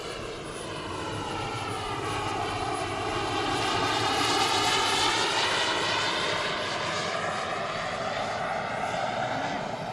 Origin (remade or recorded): recorded